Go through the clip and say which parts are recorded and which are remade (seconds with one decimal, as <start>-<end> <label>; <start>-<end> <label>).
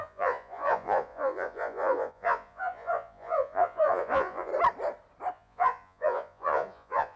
0.0-4.5 remade; 4.5-5.3 recorded; 5.3-7.2 remade